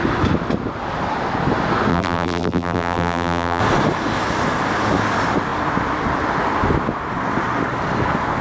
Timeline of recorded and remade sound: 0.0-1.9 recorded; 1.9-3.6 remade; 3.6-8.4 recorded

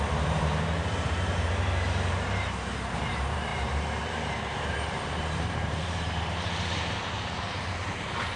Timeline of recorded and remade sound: 0.0-8.4 remade

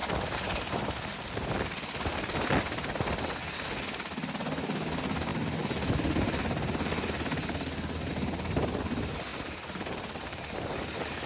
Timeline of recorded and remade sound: 0.0-9.3 recorded; 9.3-10.8 remade; 10.8-11.3 recorded

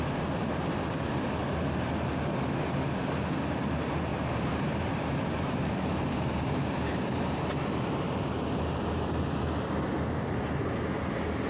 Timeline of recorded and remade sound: 0.0-4.1 recorded; 4.1-7.5 remade; 7.5-11.5 recorded

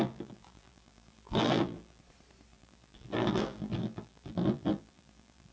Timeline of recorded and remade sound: 0.0-2.0 remade; 2.0-2.5 recorded; 2.5-5.5 remade